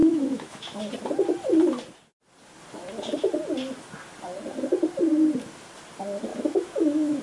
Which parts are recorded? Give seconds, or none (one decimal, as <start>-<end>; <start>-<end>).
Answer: 0.8-6.3